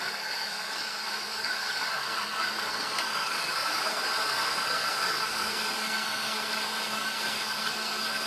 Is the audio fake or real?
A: fake